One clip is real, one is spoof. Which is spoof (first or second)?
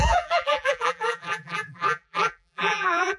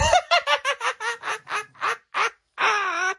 first